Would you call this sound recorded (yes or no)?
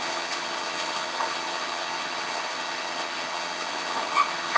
no